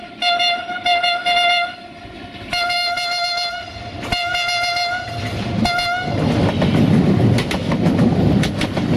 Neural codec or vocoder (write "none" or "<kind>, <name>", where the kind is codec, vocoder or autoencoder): none